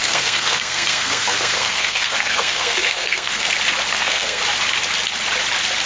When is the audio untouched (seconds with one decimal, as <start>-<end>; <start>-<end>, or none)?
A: 3.5-3.9; 4.4-5.9